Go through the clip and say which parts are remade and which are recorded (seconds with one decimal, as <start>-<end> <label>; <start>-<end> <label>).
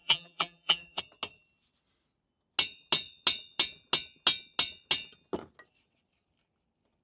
0.0-1.0 remade; 1.0-7.0 recorded